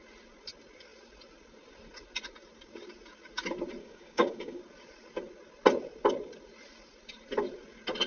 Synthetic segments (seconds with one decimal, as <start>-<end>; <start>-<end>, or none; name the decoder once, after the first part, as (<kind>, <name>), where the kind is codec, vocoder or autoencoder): 3.8-4.6 (codec, DAC)